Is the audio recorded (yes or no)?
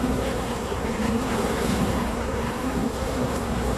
no